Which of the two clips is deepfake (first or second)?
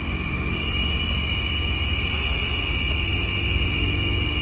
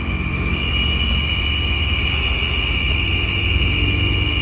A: first